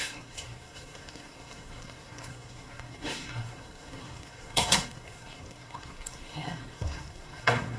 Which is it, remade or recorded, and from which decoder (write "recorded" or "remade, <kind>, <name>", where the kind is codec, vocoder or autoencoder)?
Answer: remade, codec, SNAC